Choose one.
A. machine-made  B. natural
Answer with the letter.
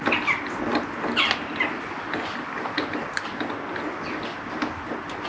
B